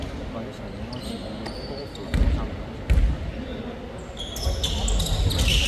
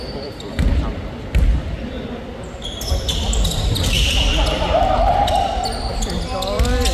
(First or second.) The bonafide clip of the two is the first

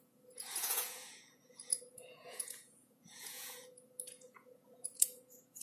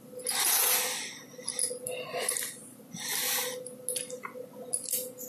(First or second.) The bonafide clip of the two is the second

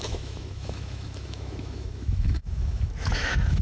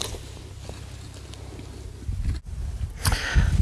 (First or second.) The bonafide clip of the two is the second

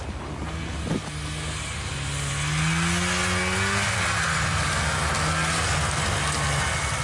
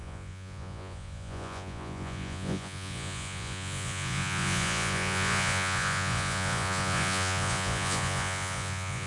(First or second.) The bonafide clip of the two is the first